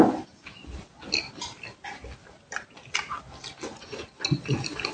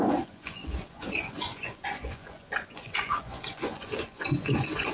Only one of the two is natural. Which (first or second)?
first